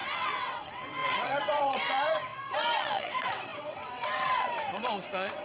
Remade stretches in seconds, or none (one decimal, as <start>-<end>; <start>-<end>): 0.0-5.4